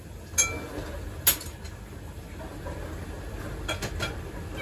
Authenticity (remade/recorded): recorded